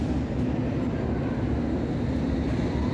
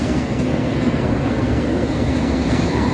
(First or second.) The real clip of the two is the first